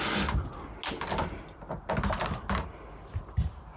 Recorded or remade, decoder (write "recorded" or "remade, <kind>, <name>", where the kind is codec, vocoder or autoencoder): recorded